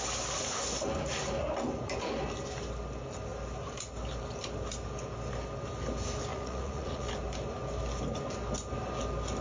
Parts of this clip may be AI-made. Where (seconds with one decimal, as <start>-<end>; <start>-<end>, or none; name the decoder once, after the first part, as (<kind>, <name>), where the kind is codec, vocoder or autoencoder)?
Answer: 6.3-7.1 (vocoder, Vocos)